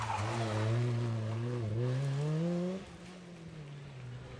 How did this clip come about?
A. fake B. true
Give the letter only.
B